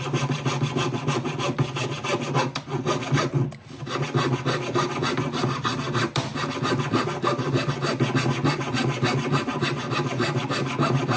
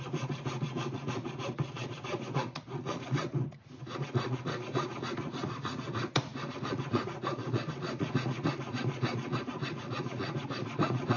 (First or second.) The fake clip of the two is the second